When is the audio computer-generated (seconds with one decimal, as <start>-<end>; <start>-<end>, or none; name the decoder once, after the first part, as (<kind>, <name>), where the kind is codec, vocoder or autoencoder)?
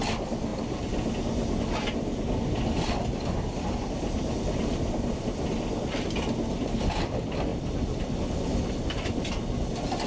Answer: none